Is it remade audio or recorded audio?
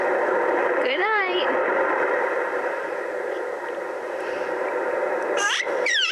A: remade